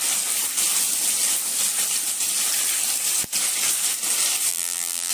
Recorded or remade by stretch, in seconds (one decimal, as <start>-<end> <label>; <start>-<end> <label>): 0.0-4.5 recorded; 4.5-5.1 remade